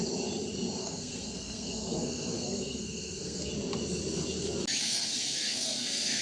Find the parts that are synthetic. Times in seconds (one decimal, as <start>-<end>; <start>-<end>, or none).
0.8-3.5; 4.8-6.2